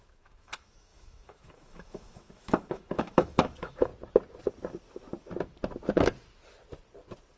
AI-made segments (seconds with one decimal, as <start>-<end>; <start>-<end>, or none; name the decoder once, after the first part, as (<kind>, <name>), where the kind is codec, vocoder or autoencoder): 0.0-3.9 (autoencoder, DAC-VAE)